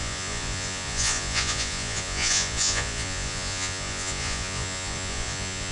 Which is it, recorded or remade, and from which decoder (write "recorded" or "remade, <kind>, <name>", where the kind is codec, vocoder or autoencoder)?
remade, vocoder, Vocos